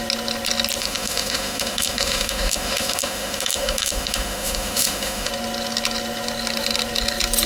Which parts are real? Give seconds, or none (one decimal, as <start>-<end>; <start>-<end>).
0.0-0.8; 5.3-7.5